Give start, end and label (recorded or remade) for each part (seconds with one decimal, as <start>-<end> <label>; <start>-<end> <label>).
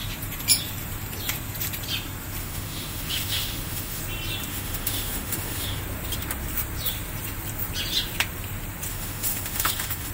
0.0-2.4 recorded; 2.4-4.0 remade; 4.0-4.5 recorded; 4.5-5.8 remade; 5.8-8.9 recorded; 8.9-10.1 remade